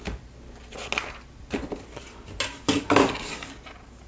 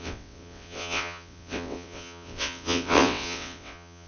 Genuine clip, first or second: first